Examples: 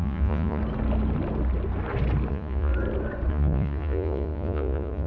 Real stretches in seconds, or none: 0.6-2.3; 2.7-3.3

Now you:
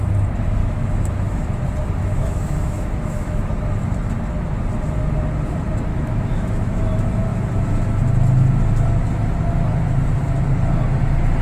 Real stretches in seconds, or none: 0.0-0.6; 1.6-2.0; 3.4-5.9; 6.7-11.4

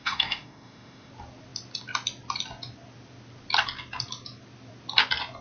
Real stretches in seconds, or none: 1.1-5.4